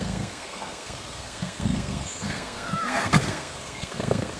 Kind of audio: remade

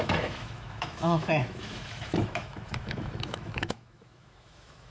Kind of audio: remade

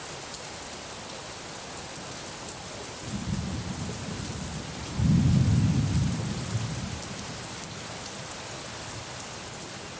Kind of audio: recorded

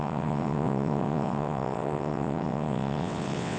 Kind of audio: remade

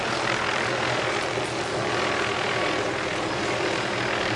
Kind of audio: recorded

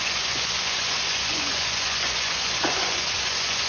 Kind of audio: remade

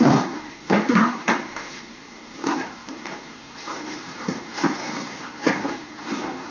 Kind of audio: remade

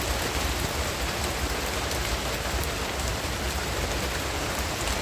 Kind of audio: recorded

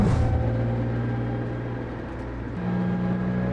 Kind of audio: recorded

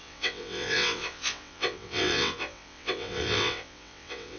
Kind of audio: remade